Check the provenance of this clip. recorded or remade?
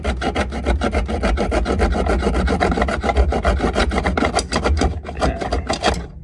recorded